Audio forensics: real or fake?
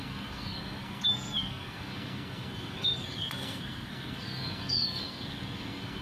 fake